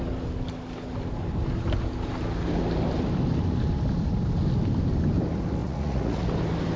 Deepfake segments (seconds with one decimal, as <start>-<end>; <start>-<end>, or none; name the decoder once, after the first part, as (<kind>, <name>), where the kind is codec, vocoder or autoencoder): 5.6-6.3 (vocoder, Vocos)